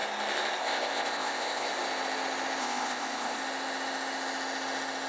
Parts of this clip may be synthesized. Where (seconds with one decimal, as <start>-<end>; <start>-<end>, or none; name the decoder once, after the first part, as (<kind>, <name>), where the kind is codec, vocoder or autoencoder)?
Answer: 0.6-1.7 (codec, ZipCodec); 2.6-3.4